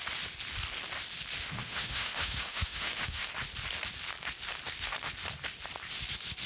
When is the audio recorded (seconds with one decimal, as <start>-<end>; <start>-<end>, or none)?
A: 0.0-1.6; 3.3-6.5